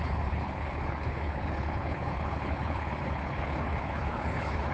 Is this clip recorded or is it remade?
remade